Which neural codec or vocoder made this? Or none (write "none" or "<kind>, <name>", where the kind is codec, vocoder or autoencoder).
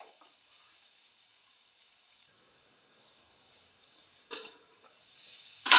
codec, DAC